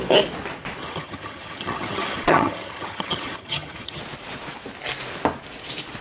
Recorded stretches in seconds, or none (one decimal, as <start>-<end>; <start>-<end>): 0.0-0.8; 4.0-6.0